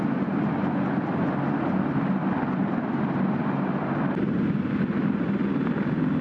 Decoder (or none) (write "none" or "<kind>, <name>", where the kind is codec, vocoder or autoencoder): none